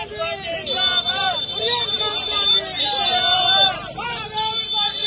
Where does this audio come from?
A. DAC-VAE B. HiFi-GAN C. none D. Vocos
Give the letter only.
C